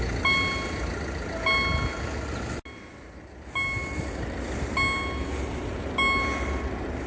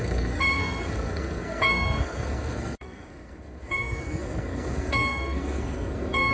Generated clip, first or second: second